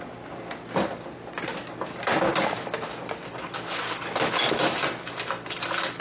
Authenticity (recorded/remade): recorded